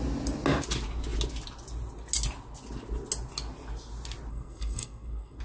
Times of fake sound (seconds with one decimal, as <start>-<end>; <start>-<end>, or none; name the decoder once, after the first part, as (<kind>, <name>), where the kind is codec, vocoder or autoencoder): 4.3-5.4 (codec, SNAC)